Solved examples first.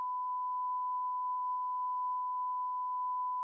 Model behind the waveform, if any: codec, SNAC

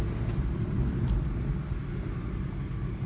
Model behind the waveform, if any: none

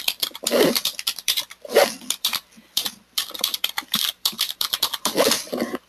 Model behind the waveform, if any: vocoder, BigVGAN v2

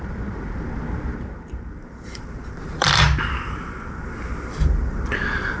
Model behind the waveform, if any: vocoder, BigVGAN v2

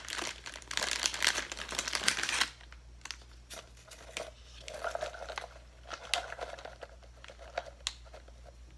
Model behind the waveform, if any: none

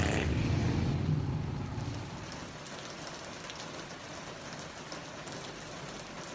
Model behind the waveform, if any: none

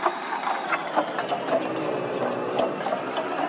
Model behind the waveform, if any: none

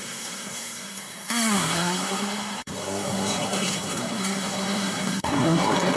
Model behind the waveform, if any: codec, SNAC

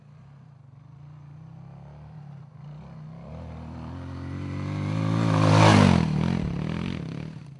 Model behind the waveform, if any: none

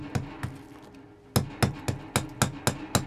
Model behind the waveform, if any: none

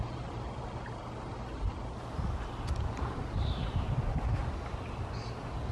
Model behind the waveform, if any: none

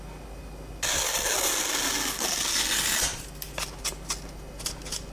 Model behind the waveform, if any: none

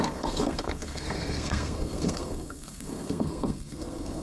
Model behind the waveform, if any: codec, SNAC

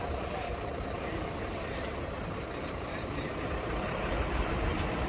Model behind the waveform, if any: vocoder, BigVGAN v2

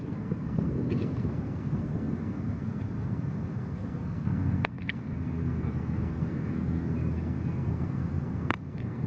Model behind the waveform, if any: codec, SNAC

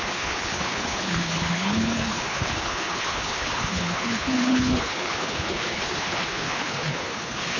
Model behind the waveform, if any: codec, HILCodec